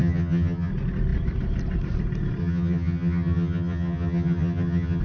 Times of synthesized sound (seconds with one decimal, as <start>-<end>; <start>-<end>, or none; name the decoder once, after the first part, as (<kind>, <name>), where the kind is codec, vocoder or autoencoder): 0.0-0.7 (vocoder, HiFi-GAN); 2.4-5.0